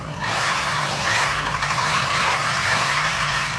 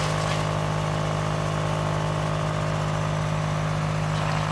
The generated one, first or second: first